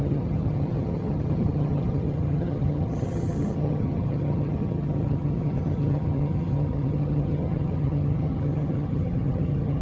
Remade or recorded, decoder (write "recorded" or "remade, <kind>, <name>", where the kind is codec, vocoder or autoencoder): remade, vocoder, HiFi-GAN